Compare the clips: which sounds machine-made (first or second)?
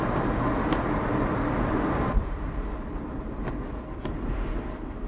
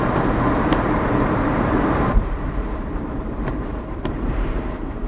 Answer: second